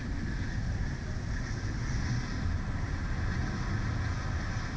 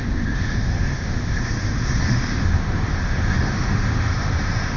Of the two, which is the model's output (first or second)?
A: second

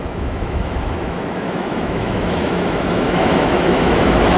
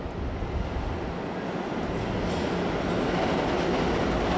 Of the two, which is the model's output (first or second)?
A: first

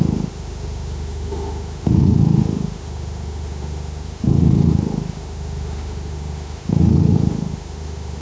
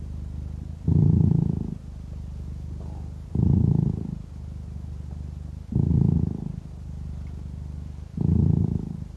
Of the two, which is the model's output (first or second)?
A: first